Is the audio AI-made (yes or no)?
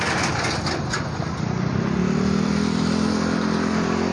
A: no